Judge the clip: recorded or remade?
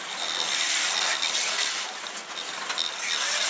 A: recorded